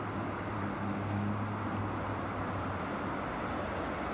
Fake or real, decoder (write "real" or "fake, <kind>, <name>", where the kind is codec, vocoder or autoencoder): real